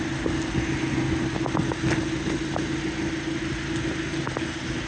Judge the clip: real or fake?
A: real